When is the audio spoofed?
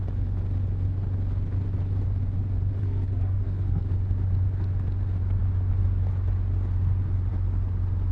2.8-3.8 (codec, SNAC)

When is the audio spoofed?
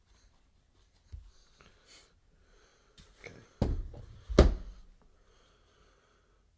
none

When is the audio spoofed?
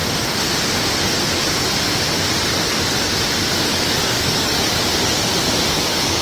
3.7-4.9 (codec, DAC); 5.7-6.2